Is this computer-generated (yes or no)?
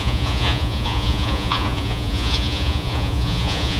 yes